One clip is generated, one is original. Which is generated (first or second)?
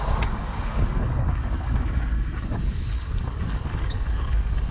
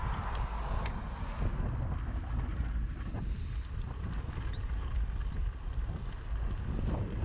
first